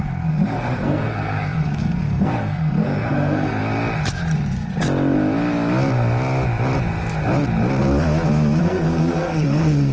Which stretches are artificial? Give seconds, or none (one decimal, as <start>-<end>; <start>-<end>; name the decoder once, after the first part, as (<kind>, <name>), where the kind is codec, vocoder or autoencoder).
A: 0.0-3.6 (codec, SNAC); 8.6-9.9